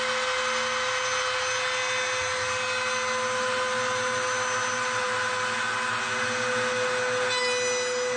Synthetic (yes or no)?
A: no